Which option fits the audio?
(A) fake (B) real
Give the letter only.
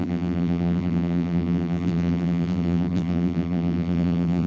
A